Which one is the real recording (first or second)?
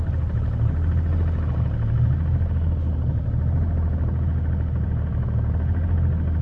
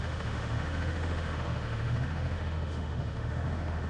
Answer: first